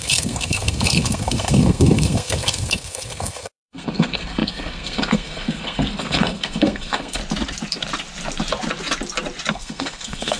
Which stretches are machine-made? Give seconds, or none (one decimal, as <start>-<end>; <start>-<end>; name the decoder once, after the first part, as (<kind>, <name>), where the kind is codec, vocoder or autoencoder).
0.0-7.2 (codec, SNAC); 9.5-10.4